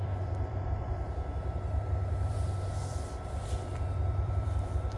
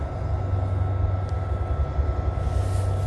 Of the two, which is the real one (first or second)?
second